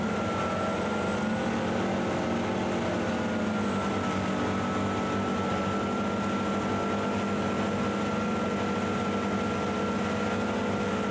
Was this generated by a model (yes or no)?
no